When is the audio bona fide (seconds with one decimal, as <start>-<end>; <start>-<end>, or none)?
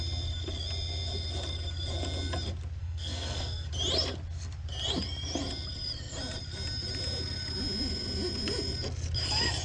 0.0-2.8; 3.7-9.6